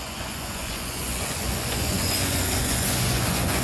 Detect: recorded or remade remade